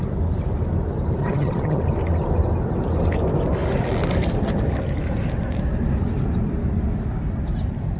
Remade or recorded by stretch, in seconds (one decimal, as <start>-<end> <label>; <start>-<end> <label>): 0.0-1.2 recorded; 1.2-1.8 remade; 1.8-8.0 recorded

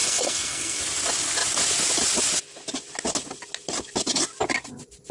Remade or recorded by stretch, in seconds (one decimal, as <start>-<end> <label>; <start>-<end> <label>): 0.0-0.8 remade; 0.8-5.1 recorded

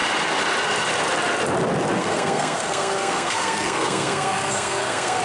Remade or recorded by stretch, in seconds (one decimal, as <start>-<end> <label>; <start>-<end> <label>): 0.0-2.0 recorded; 2.0-5.2 remade

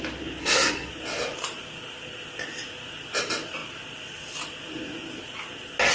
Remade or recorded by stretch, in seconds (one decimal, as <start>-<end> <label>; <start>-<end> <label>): 0.0-0.4 recorded; 0.4-0.9 remade; 0.9-5.9 recorded

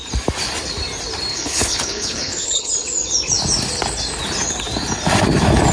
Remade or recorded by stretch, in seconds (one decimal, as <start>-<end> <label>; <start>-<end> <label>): 0.0-1.3 recorded; 1.3-2.7 remade; 2.7-5.7 recorded

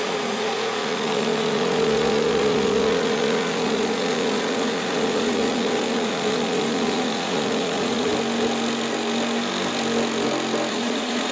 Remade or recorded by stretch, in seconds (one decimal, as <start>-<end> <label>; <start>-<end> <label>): 0.0-8.1 remade; 8.1-10.7 recorded; 10.7-11.3 remade

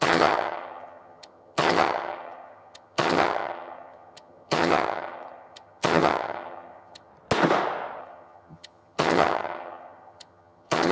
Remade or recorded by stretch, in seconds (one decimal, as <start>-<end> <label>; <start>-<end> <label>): 0.0-7.1 remade; 7.1-8.0 recorded; 8.0-10.9 remade

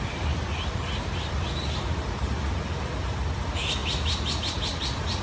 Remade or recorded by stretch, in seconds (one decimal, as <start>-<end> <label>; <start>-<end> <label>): 0.0-5.2 recorded